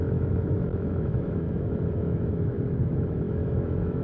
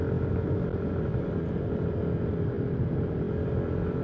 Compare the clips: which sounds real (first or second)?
second